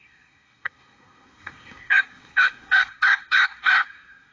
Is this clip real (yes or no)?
no